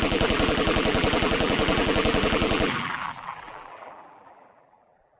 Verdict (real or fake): fake